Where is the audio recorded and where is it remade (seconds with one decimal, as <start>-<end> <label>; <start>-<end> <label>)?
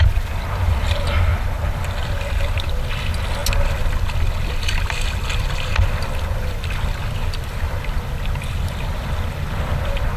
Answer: 0.0-10.2 recorded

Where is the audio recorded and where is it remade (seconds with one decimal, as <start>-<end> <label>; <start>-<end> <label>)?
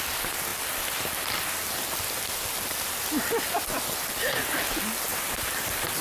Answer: 0.0-5.1 recorded; 5.1-6.0 remade